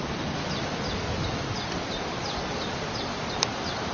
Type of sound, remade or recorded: recorded